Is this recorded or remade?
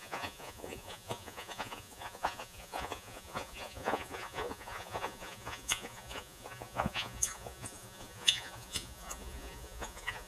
remade